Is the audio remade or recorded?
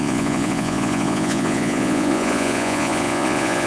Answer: remade